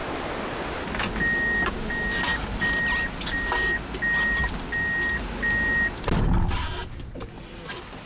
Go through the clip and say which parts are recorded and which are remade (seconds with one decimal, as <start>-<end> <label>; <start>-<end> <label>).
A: 0.0-8.1 recorded